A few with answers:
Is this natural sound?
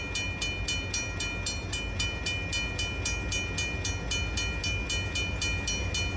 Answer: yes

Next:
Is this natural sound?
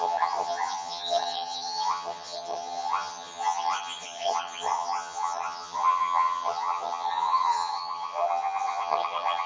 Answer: no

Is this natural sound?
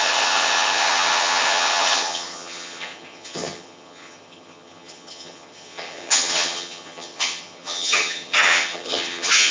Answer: no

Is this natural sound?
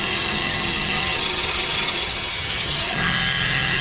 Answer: no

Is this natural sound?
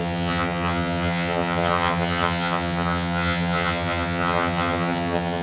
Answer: no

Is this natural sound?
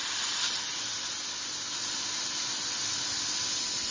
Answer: yes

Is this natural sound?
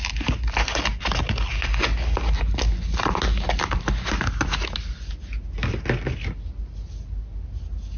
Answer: yes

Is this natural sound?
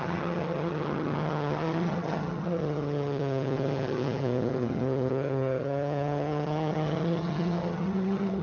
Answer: no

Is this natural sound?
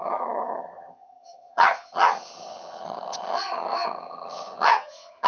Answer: no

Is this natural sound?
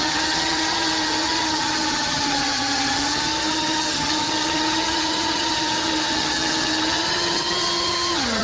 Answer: no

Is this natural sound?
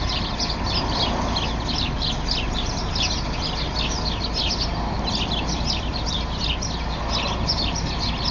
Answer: yes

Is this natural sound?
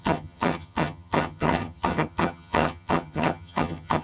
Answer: no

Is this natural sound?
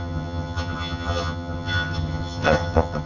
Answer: no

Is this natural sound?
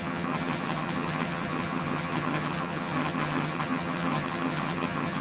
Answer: no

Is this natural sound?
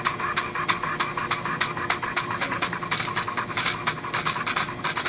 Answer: yes